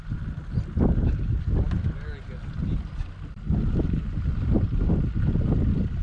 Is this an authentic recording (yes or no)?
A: yes